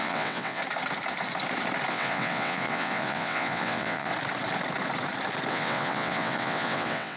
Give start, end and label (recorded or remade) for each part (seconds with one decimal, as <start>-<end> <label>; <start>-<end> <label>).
0.0-0.6 remade; 0.6-1.9 recorded; 1.9-4.1 remade; 4.1-5.5 recorded; 5.5-7.2 remade